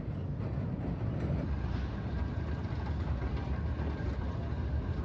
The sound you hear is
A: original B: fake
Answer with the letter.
A